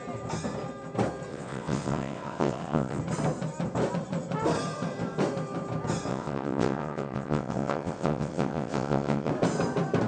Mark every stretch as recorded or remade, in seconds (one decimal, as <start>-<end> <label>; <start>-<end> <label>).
0.0-1.3 recorded; 1.3-3.0 remade; 3.0-6.1 recorded; 6.1-9.3 remade; 9.3-10.1 recorded